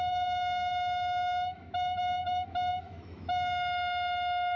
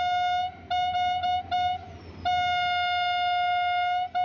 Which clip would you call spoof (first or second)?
first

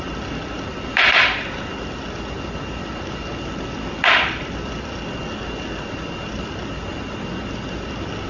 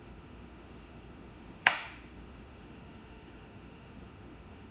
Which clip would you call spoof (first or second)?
second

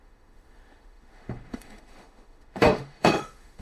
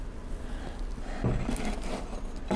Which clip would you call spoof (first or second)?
first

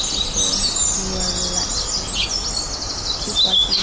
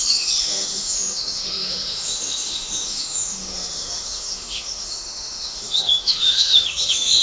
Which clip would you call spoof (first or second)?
second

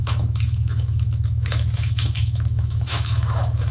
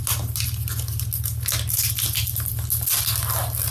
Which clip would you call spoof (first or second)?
first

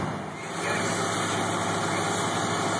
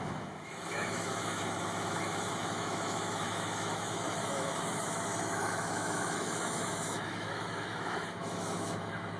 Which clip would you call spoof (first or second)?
second